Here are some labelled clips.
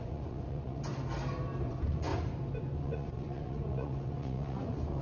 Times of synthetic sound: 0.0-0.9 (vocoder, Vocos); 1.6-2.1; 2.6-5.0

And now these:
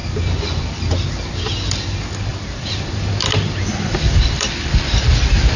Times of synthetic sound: 0.0-0.9 (vocoder, BigVGAN v2); 2.3-4.7